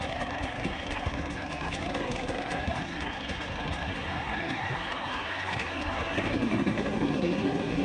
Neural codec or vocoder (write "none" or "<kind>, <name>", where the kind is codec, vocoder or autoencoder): codec, SNAC